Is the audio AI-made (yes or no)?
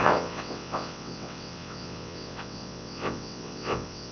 yes